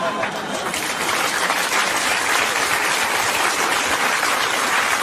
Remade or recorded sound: recorded